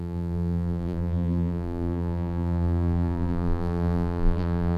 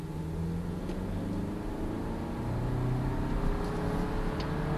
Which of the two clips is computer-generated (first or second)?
first